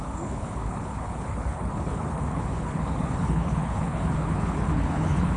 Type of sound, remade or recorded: remade